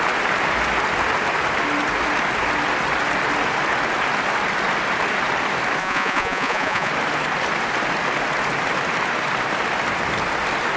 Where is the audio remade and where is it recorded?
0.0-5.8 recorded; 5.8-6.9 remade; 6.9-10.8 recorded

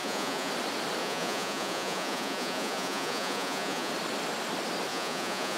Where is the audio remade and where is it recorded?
0.0-0.5 remade; 0.5-1.0 recorded; 1.0-3.9 remade; 3.9-4.9 recorded; 4.9-5.6 remade

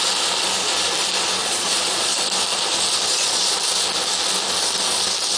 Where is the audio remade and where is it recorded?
0.0-1.4 recorded; 1.4-2.1 remade; 2.1-3.1 recorded; 3.1-3.6 remade; 3.6-5.4 recorded

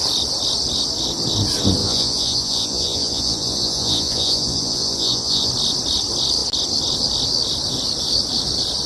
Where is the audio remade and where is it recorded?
0.0-1.8 recorded; 1.8-5.5 remade; 5.5-8.9 recorded

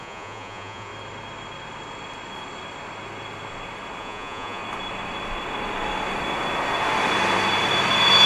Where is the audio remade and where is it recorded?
0.0-0.9 remade; 0.9-4.0 recorded; 4.0-4.6 remade; 4.6-8.3 recorded